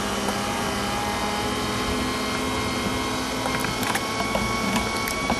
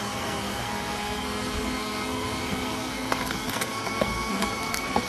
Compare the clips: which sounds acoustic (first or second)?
first